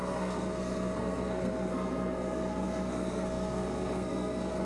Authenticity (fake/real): fake